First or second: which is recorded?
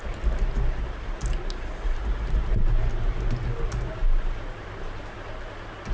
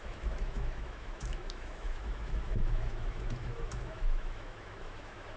first